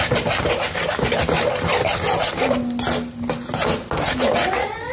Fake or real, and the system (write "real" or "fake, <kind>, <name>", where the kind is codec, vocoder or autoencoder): real